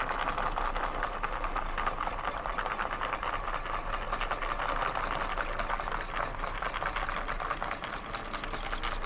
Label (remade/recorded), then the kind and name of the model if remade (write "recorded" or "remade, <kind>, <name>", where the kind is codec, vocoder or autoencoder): recorded